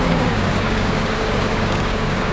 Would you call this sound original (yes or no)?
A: no